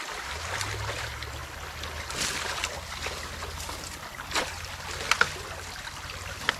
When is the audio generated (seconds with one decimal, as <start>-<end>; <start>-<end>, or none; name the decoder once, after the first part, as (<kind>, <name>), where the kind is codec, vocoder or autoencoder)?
none